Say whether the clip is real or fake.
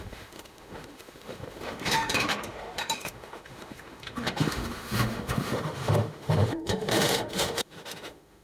fake